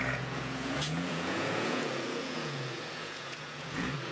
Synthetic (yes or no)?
yes